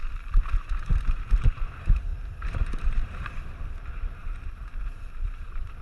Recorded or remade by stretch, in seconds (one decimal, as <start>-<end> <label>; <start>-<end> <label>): 0.0-5.8 remade